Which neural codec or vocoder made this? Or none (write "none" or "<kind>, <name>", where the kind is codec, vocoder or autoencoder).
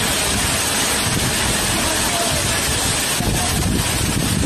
none